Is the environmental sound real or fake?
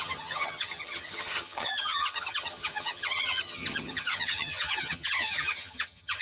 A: fake